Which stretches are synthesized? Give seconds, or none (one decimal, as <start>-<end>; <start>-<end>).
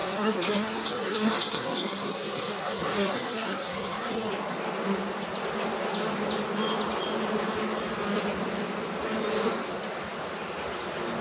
0.0-4.3